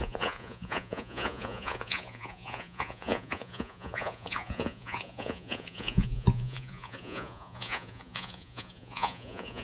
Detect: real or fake fake